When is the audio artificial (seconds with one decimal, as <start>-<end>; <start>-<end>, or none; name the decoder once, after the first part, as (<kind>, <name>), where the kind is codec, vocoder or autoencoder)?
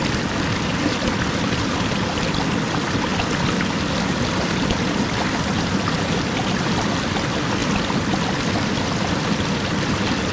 none